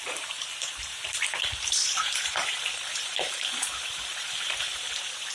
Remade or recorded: remade